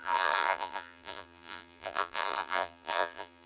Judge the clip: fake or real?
fake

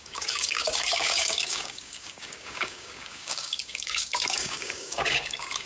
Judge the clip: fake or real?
fake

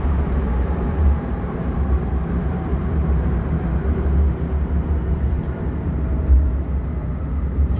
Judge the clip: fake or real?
fake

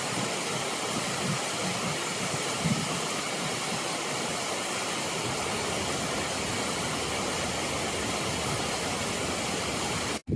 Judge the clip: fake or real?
real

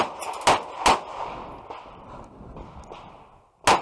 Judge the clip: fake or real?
real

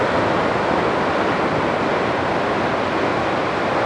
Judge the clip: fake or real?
real